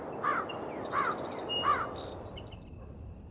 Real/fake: real